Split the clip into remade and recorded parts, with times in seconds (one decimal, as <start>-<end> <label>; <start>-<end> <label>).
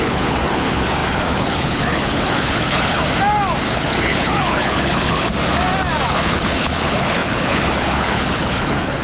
0.0-3.0 remade; 3.0-3.7 recorded; 3.7-5.3 remade; 5.3-6.1 recorded; 6.1-9.0 remade